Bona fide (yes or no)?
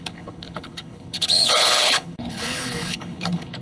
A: no